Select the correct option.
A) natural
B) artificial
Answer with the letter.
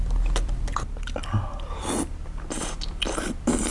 B